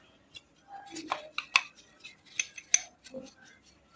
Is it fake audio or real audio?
real